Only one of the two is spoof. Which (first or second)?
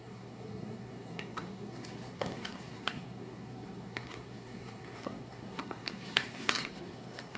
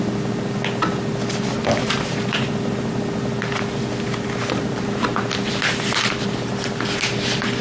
first